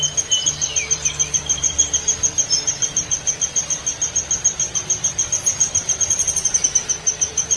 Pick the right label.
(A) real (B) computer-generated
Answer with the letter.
B